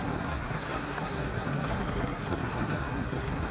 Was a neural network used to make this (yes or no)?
yes